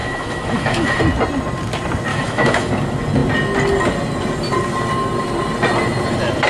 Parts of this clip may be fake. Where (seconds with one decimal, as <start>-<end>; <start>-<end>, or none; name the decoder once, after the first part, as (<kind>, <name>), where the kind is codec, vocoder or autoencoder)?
0.0-1.0 (autoencoder, DAC-VAE); 2.1-2.7